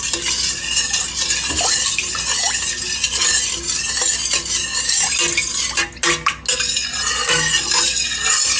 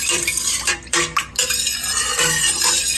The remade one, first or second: second